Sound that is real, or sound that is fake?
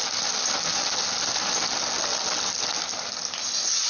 real